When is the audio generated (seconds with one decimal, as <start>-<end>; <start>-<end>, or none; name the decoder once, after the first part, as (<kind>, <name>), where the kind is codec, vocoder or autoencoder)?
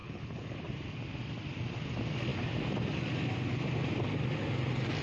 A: 0.0-0.6 (codec, HILCodec)